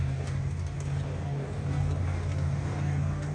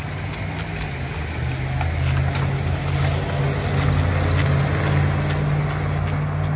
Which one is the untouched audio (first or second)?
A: second